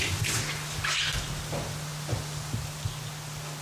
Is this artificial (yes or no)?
no